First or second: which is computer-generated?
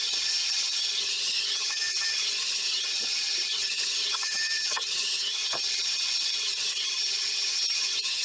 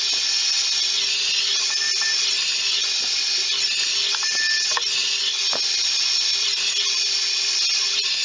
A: first